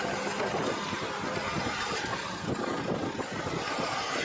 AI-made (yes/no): no